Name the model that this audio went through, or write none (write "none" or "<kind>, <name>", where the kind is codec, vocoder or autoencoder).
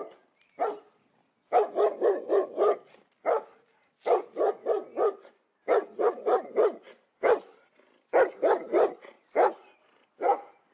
none